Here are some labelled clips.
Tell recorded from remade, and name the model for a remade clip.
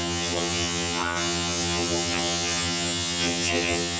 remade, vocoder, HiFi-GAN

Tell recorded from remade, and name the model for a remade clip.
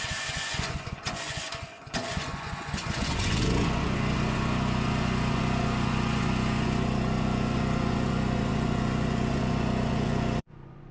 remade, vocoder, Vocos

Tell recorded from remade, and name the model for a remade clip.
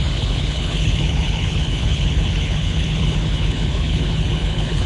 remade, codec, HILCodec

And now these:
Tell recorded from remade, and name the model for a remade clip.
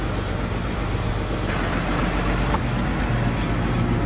recorded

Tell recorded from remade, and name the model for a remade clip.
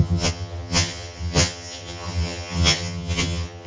remade, vocoder, HiFi-GAN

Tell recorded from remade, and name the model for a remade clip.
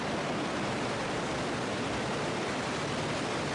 recorded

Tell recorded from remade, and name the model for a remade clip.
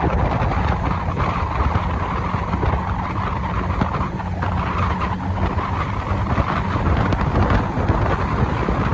recorded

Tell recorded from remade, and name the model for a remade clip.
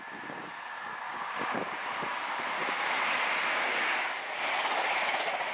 recorded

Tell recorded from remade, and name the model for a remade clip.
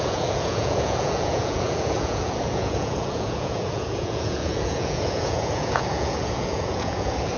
remade, vocoder, Vocos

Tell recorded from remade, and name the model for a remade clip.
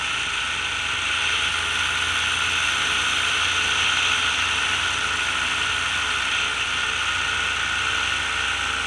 recorded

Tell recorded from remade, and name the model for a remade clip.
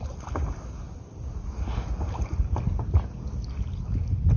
recorded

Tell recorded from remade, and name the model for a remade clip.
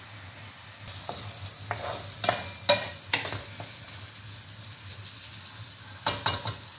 recorded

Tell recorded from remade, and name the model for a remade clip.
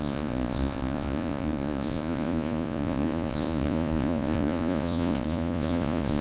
remade, vocoder, Vocos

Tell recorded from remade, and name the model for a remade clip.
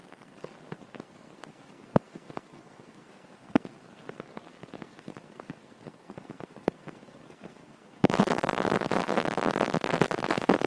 remade, codec, SNAC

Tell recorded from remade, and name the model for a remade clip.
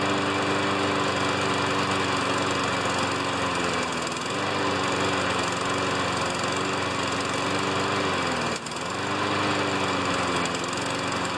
recorded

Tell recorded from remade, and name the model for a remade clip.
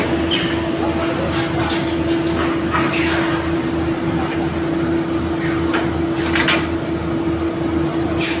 recorded